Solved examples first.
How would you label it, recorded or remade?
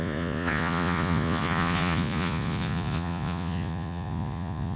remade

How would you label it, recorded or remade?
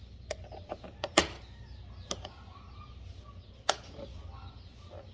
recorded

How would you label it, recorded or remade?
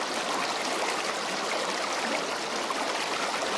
recorded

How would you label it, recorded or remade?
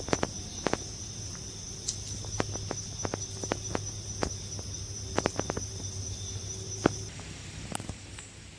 recorded